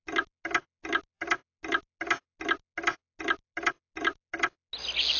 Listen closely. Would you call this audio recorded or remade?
recorded